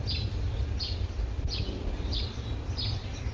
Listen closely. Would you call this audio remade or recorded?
recorded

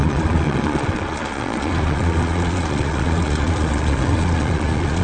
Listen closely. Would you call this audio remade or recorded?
remade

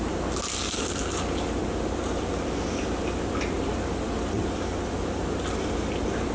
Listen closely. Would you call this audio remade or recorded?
recorded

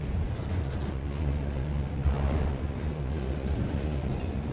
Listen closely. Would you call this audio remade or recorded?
remade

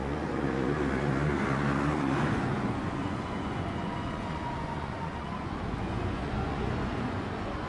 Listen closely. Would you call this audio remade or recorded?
remade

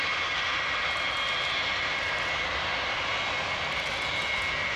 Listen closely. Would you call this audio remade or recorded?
recorded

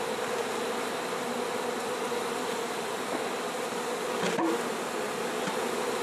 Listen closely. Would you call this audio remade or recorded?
recorded